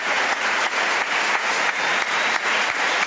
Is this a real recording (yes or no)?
no